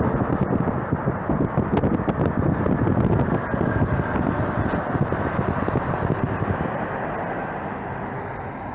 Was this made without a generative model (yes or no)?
yes